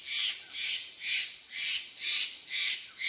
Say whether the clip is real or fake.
real